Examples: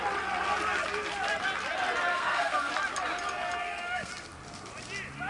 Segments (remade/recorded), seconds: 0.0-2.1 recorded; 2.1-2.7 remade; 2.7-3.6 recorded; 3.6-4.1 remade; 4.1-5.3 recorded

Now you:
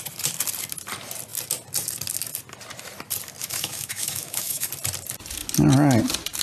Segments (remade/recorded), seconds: 0.0-3.4 recorded; 3.4-4.7 remade; 4.7-6.4 recorded

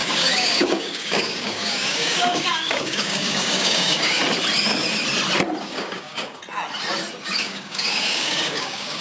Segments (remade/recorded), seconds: 0.0-4.2 remade; 4.2-5.6 recorded; 5.6-6.4 remade; 6.4-7.2 recorded; 7.2-9.0 remade

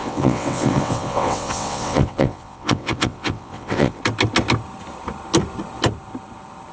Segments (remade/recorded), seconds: 0.0-4.0 remade; 4.0-6.7 recorded

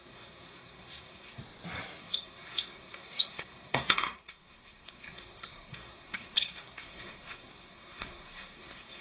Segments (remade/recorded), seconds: 0.0-1.4 remade; 1.4-2.0 recorded; 2.0-9.0 remade

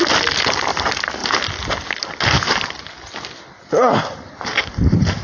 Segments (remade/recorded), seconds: 0.0-5.2 recorded

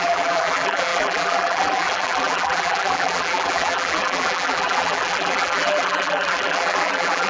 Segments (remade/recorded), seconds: 0.0-7.3 remade